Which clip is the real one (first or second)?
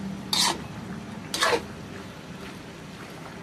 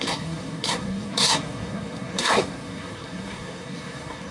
first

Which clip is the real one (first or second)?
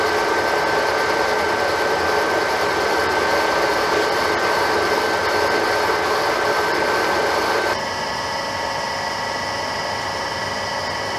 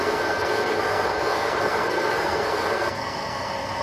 first